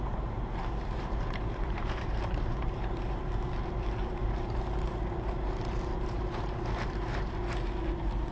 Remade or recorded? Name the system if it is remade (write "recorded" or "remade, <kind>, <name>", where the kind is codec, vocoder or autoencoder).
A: remade, vocoder, BigVGAN v2